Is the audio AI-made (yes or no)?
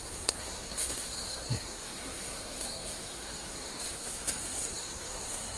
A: yes